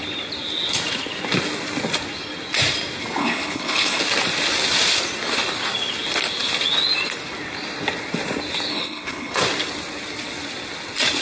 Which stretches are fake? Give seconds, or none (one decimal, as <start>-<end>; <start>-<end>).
3.2-4.0; 8.7-9.4